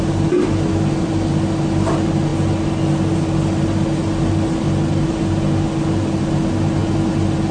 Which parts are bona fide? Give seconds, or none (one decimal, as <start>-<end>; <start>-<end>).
0.0-7.5